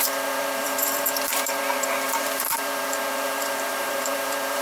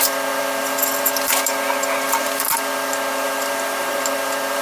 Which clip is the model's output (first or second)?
first